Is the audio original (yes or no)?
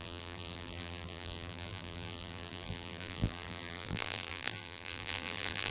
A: no